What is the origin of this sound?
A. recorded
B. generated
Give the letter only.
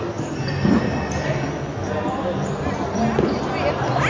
A